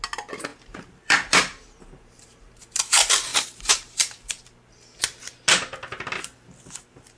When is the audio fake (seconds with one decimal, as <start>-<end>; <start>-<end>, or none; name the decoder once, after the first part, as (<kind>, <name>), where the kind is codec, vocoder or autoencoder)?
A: 0.5-2.6 (vocoder, BigVGAN v2); 3.3-5.0